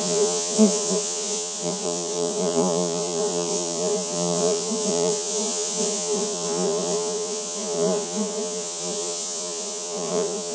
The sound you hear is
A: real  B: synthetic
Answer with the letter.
B